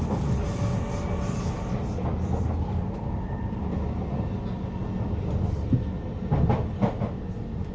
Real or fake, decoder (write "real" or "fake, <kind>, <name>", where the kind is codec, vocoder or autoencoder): real